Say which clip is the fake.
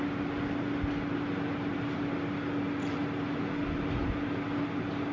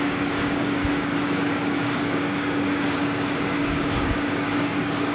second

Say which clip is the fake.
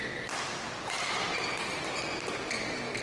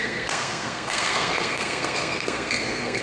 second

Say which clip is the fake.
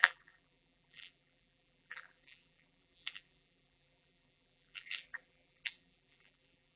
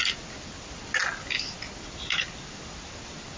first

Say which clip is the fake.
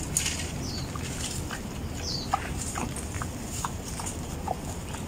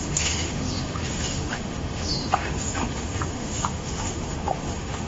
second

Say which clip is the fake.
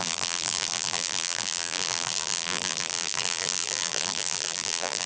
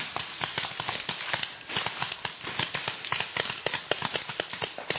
first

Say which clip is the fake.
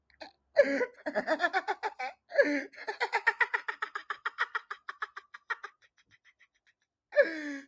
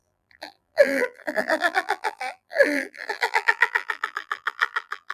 second